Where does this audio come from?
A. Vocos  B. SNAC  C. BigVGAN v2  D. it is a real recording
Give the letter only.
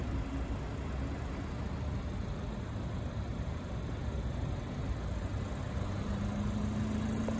D